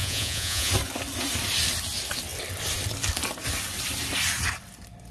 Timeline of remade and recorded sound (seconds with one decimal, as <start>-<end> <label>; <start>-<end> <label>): 0.0-0.7 remade; 0.7-5.1 recorded